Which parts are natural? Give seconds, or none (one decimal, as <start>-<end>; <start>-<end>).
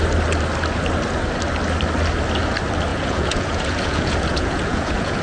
0.0-2.9